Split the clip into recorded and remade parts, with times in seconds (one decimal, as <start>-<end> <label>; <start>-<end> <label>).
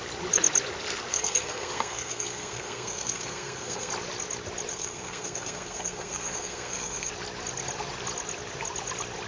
0.0-1.1 recorded; 1.1-3.9 remade; 3.9-4.7 recorded; 4.7-7.1 remade; 7.1-9.3 recorded